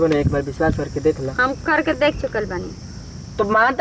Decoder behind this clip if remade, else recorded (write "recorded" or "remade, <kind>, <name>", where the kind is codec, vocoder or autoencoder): recorded